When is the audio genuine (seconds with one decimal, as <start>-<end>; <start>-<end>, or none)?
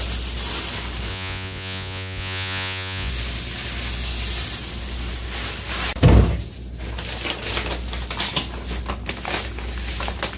0.0-1.1; 3.1-10.4